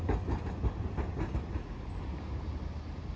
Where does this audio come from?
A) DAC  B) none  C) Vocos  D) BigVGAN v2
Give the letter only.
B